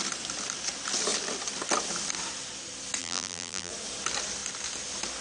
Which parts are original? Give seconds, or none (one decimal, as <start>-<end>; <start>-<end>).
0.0-3.0; 3.7-5.2